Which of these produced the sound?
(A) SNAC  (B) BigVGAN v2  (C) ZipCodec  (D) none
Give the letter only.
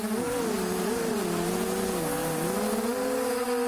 D